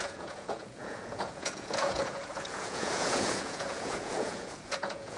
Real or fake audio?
fake